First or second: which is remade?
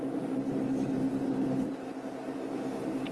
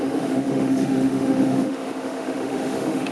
second